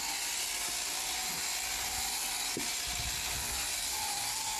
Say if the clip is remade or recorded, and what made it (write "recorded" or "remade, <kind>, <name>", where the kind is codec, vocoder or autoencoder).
recorded